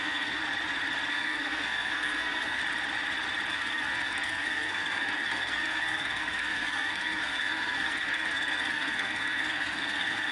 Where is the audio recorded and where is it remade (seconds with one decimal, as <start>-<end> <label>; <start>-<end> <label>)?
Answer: 0.0-0.4 remade; 0.4-1.1 recorded; 1.1-2.6 remade; 2.6-3.5 recorded; 3.5-10.3 remade